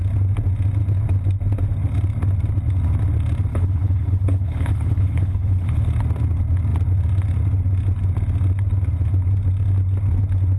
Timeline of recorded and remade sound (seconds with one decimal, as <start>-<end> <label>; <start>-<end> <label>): 0.0-3.5 recorded; 3.5-5.9 remade; 5.9-10.6 recorded